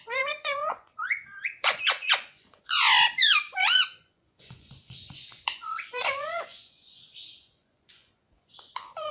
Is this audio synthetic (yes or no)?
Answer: yes